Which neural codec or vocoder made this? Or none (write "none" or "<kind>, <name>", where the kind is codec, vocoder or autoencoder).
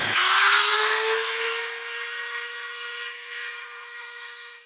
codec, SNAC